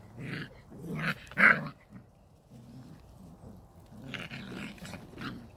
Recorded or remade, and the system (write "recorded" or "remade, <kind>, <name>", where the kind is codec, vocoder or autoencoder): recorded